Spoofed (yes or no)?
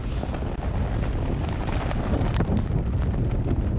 no